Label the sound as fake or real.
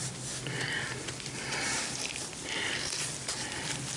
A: real